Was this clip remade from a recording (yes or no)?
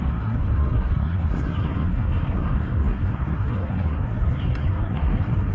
yes